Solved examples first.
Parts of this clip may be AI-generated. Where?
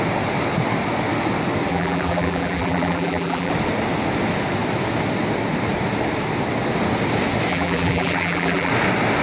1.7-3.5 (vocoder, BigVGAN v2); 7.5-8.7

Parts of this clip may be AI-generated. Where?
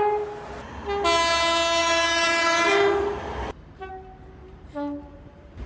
1.8-3.9 (vocoder, BigVGAN v2); 4.4-5.7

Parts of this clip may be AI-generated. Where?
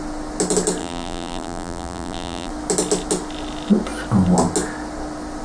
0.8-2.5 (vocoder, BigVGAN v2)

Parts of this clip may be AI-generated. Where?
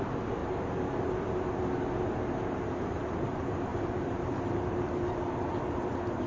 0.0-0.4 (vocoder, BigVGAN v2); 2.1-6.3